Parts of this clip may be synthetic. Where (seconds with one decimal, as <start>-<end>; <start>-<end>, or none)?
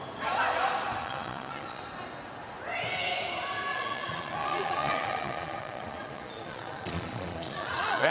1.0-1.8; 3.7-8.1